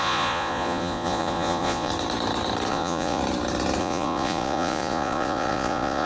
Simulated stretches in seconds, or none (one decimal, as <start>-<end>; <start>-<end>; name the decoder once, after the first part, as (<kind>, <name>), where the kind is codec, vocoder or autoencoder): 0.0-1.9 (vocoder, Vocos); 2.7-3.2; 3.8-6.1